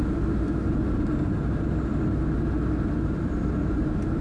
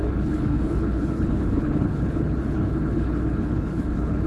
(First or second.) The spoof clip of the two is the second